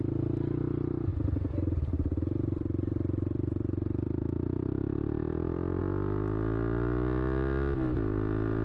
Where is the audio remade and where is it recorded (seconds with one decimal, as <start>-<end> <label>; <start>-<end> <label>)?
0.0-1.1 recorded; 1.1-5.8 remade; 5.8-8.6 recorded